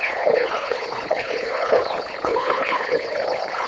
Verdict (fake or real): fake